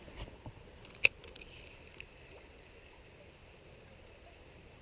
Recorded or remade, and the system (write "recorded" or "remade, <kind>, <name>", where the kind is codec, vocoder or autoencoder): recorded